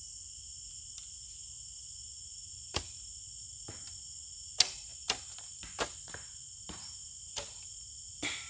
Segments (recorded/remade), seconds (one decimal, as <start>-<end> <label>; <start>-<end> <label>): 0.0-8.5 recorded